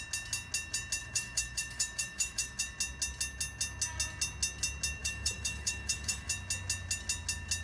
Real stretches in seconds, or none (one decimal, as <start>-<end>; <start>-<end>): 0.0-1.0; 2.6-5.0; 6.3-7.6